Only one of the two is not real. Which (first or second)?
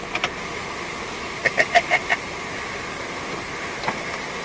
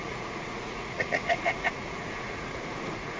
second